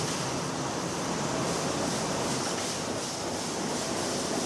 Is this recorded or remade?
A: recorded